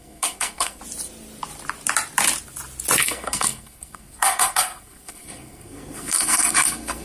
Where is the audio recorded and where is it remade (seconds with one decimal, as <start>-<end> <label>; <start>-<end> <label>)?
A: 0.0-0.8 remade; 0.8-3.0 recorded; 3.0-7.0 remade